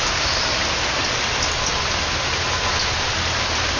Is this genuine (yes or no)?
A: yes